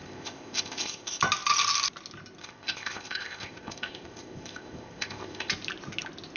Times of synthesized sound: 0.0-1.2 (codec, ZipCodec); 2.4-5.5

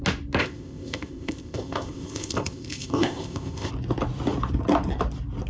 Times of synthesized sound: 0.4-3.7 (codec, ZipCodec)

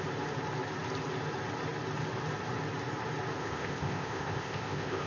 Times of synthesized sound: 3.4-5.1 (codec, ZipCodec)

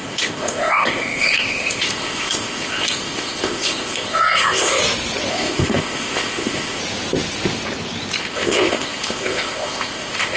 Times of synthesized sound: 0.0-4.8 (codec, ZipCodec); 5.3-6.8; 8.2-10.4

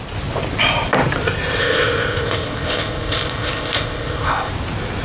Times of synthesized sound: 1.6-4.5 (codec, ZipCodec)

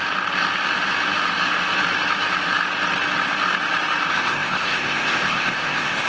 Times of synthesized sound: 4.1-6.1 (codec, ZipCodec)

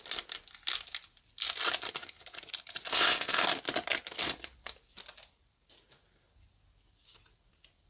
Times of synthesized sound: 2.9-3.4 (codec, ZipCodec)